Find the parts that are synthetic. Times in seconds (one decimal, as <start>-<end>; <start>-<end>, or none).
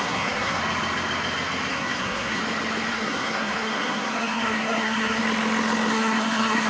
0.0-0.6; 1.7-2.4; 2.9-5.2; 5.9-6.7